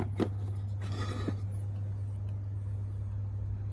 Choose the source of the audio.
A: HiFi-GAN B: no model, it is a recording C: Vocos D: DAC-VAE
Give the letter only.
B